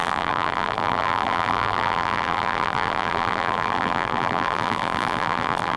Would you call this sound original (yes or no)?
no